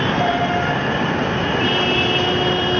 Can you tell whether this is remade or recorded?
recorded